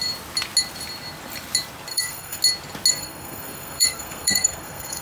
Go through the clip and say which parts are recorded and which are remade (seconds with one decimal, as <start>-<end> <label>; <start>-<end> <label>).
0.0-1.9 recorded; 1.9-2.4 remade; 2.4-2.9 recorded; 2.9-5.0 remade